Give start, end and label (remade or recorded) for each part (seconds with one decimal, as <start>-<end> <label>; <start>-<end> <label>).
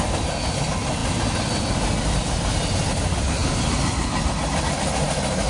0.0-5.5 recorded